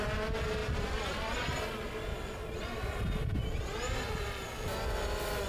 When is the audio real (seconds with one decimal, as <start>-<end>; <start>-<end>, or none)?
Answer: 0.0-5.5